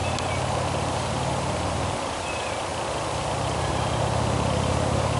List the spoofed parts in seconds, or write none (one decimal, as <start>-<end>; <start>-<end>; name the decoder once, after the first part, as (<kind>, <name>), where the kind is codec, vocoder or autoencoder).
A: none